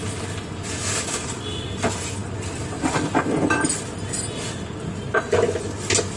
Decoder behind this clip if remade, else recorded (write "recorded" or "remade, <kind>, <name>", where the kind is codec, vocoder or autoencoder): recorded